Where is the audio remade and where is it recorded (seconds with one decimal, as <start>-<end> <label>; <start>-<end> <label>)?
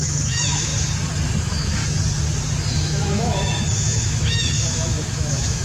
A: 0.0-0.7 remade; 0.7-1.4 recorded; 1.4-1.8 remade; 1.8-2.7 recorded; 2.7-5.6 remade